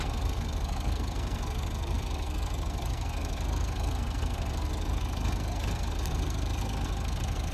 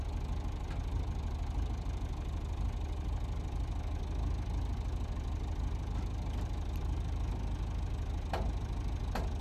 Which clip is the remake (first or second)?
first